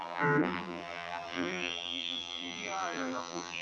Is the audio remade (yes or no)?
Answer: yes